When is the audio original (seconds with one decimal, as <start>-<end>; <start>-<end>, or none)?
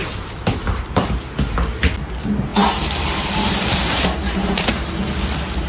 0.0-2.5; 4.9-5.7